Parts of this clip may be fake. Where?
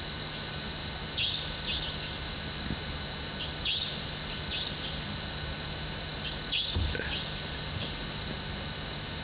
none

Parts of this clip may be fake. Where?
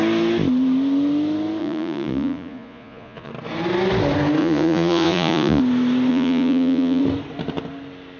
1.6-3.3 (vocoder, Vocos); 4.4-5.6; 6.1-7.0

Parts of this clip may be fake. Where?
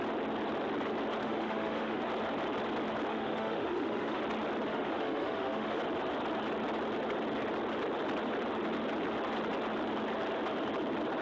1.2-2.0 (autoencoder, DAC-VAE); 3.1-4.2; 4.7-5.8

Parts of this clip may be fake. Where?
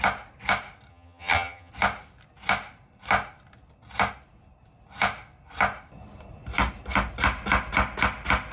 0.9-1.7 (vocoder, HiFi-GAN)